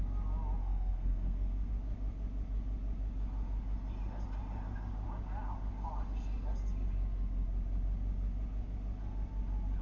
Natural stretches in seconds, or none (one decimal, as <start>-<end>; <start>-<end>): 0.0-0.6; 1.7-9.8